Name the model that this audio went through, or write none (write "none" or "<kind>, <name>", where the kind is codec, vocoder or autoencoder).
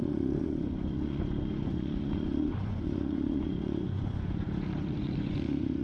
vocoder, Vocos